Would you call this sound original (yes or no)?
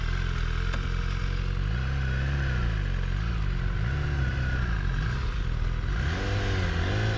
yes